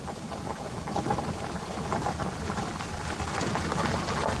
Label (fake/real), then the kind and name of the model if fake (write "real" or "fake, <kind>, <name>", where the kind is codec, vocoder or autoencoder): real